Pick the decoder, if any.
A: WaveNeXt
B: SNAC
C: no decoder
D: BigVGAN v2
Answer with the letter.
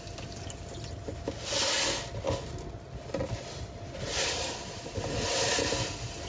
C